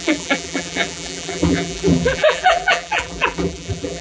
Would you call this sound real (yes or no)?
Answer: no